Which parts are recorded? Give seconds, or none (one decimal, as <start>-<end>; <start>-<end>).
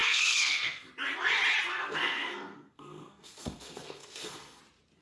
0.9-1.7; 4.6-5.0